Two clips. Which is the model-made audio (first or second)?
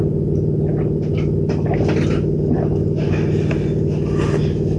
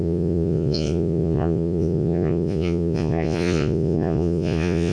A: second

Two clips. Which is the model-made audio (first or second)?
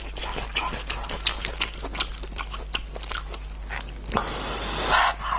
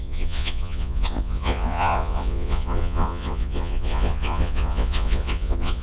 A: second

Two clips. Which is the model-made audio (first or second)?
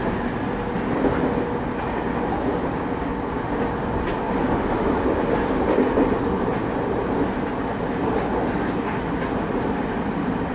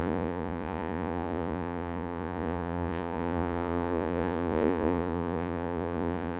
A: second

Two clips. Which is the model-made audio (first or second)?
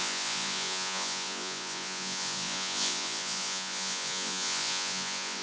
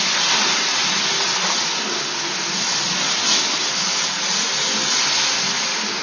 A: first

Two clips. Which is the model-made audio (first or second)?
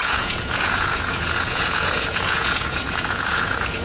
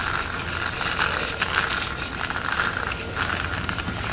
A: first